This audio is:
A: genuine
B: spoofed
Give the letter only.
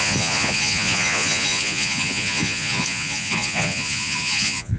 B